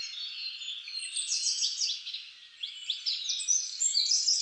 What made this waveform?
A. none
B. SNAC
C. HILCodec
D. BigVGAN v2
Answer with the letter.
A